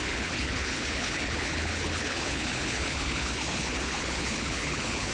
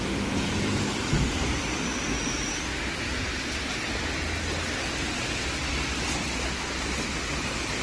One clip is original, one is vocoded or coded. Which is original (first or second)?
second